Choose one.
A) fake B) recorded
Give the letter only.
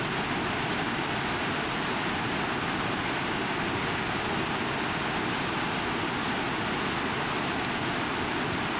B